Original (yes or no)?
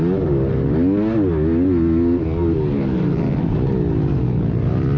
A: yes